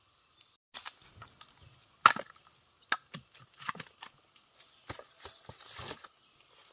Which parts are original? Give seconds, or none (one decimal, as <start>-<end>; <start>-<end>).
0.0-6.7